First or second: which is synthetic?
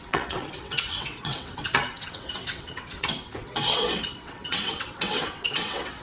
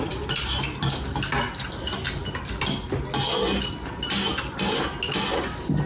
first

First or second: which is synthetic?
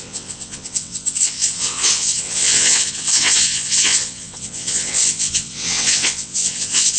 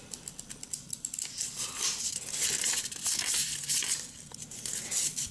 first